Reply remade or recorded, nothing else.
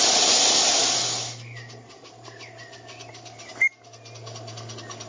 recorded